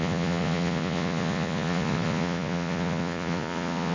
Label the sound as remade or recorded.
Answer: remade